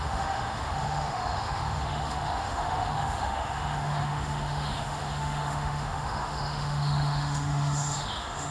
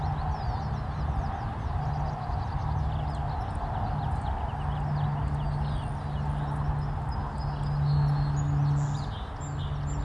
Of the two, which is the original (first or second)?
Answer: second